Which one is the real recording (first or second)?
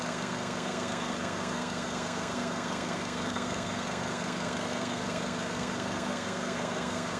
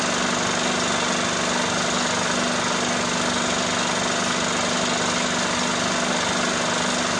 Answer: second